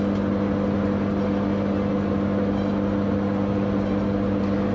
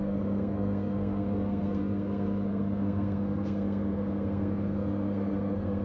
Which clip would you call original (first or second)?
first